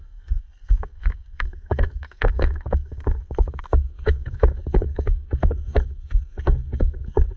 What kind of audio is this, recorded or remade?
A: remade